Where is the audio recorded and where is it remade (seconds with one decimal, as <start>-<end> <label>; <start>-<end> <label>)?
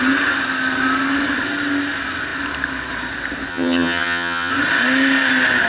0.0-3.5 recorded; 3.5-4.5 remade; 4.5-5.7 recorded